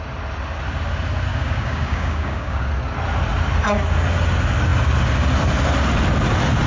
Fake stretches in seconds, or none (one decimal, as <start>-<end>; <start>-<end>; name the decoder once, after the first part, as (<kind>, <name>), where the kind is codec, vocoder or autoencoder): 1.3-2.7 (codec, DAC)